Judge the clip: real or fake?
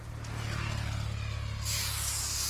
real